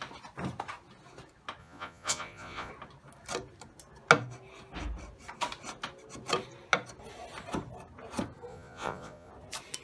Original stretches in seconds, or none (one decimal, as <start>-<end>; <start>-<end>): 0.0-1.6; 2.7-8.5; 9.3-9.8